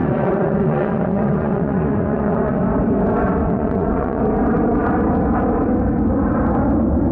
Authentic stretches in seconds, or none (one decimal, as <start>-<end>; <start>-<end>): 2.6-3.4; 4.2-7.1